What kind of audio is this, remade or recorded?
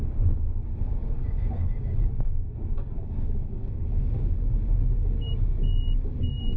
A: remade